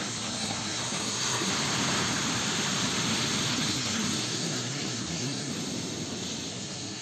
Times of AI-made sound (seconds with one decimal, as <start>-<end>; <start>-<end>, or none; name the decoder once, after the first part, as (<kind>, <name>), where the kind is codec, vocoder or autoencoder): 0.0-1.5 (codec, SNAC); 3.5-5.5; 6.5-7.0